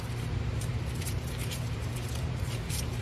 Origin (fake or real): fake